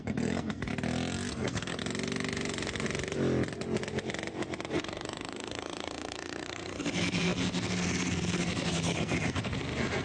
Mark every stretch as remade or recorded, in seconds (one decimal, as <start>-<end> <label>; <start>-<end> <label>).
0.0-0.7 remade; 0.7-1.3 recorded; 1.3-1.8 remade; 1.8-4.7 recorded; 4.7-10.0 remade